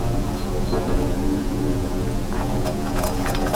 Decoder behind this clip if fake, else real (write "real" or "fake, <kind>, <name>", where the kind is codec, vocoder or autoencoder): fake, vocoder, Vocos